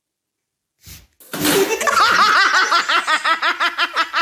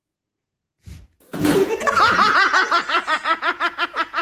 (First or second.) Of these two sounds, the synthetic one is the second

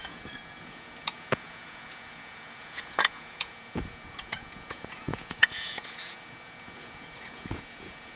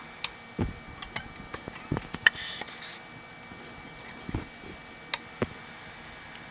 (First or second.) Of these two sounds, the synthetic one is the first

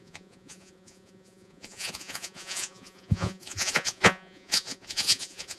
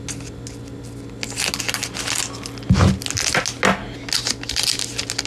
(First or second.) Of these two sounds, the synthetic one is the first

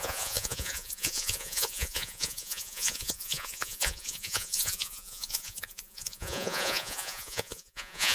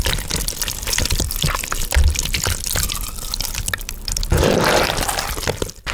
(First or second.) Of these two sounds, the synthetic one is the first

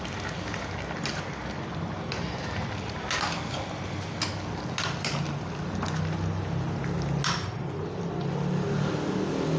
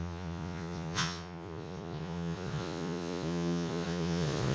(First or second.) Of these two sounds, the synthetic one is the second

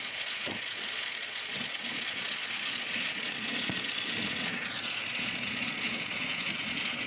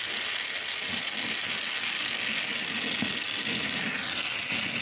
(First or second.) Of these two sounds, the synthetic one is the first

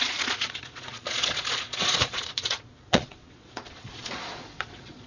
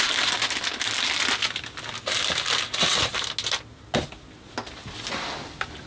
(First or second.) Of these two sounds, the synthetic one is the first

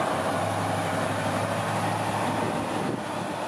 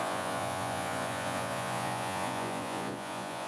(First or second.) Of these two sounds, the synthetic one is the second